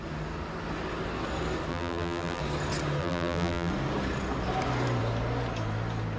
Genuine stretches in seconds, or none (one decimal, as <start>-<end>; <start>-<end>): 0.0-1.7; 2.4-3.0; 3.7-6.2